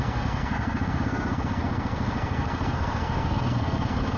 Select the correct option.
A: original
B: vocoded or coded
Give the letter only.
B